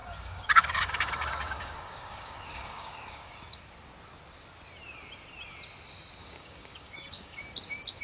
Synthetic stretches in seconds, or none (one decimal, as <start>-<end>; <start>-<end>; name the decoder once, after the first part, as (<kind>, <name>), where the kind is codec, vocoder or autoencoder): 0.0-3.6 (codec, DAC); 6.2-7.4